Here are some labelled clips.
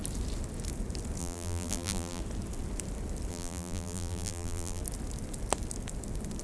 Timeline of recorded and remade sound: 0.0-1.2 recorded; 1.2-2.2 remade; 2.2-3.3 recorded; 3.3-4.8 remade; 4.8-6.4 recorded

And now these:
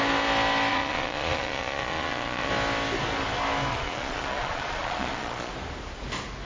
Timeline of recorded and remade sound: 0.0-0.7 recorded; 0.7-2.5 remade; 2.5-3.7 recorded; 3.7-5.5 remade; 5.5-6.4 recorded

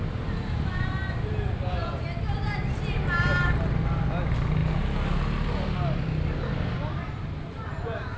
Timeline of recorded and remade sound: 0.0-8.2 recorded

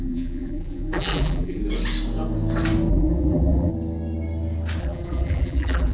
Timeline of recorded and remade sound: 0.0-1.6 remade; 1.6-2.9 recorded; 2.9-3.7 remade; 3.7-4.8 recorded; 4.8-5.9 remade

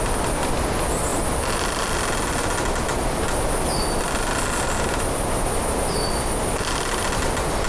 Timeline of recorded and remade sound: 0.0-7.7 recorded

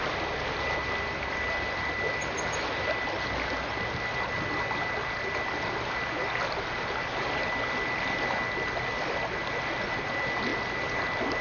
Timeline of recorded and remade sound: 0.0-11.4 recorded

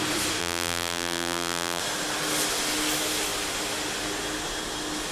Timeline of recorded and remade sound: 0.0-0.4 recorded; 0.4-1.8 remade; 1.8-5.1 recorded

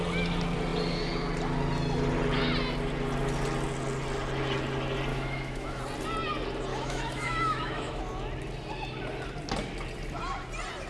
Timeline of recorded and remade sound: 0.0-5.1 recorded; 5.1-5.8 remade; 5.8-6.7 recorded; 6.7-8.0 remade; 8.0-10.9 recorded